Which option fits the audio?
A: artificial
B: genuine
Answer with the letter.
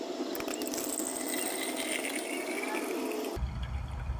B